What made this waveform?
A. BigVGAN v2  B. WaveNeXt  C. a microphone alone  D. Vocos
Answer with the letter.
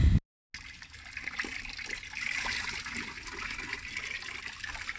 C